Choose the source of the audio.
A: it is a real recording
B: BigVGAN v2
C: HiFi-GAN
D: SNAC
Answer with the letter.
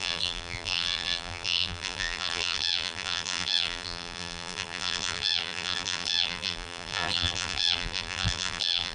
B